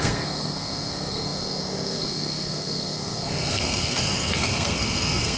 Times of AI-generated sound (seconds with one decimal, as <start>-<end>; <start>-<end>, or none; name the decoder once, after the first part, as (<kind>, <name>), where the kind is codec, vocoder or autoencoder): 0.0-5.4 (codec, SNAC)